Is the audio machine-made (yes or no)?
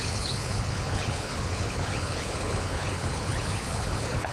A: yes